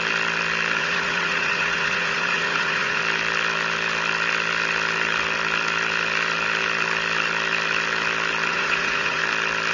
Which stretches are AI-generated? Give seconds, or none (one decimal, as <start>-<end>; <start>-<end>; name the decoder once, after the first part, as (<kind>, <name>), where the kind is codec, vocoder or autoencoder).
0.8-3.0 (vocoder, Vocos); 8.5-9.2